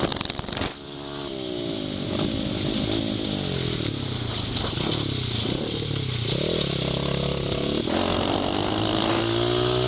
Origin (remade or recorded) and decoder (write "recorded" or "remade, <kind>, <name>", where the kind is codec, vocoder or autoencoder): recorded